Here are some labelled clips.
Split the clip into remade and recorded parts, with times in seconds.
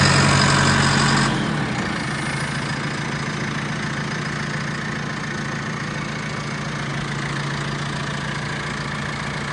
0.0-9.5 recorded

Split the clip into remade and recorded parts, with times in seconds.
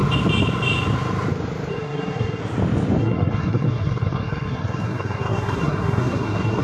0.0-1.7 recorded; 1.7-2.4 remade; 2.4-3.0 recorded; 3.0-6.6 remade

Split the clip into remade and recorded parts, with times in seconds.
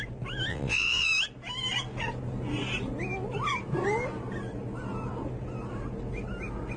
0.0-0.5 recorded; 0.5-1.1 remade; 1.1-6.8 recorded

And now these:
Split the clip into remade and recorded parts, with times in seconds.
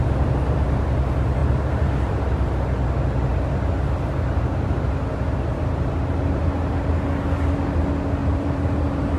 0.0-1.4 recorded; 1.4-2.6 remade; 2.6-8.2 recorded; 8.2-9.2 remade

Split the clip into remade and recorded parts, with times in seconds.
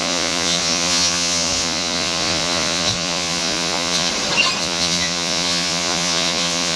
0.0-4.1 remade; 4.1-4.6 recorded; 4.6-6.8 remade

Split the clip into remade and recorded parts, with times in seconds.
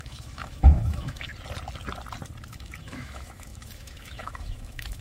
0.0-1.3 remade; 1.3-2.5 recorded; 2.5-5.0 remade